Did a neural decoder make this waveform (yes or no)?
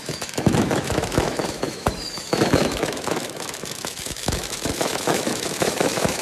yes